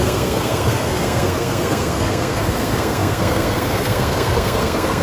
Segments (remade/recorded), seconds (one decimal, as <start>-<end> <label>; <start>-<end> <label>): 0.0-5.0 remade